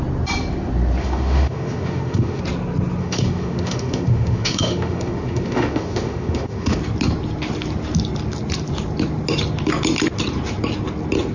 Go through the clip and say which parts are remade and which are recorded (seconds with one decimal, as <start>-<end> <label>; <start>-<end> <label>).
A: 0.0-1.0 recorded; 1.0-2.4 remade; 2.4-3.0 recorded; 3.0-6.8 remade; 6.8-11.3 recorded